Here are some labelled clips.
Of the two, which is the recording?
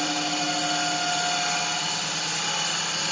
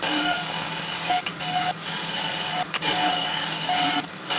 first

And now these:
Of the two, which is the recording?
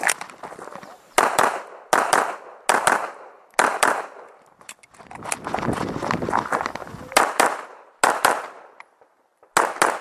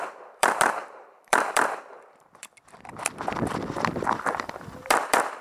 first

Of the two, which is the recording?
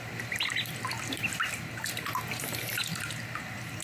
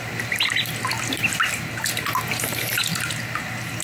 second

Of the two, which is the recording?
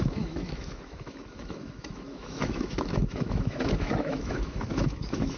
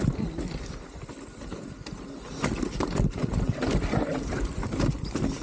second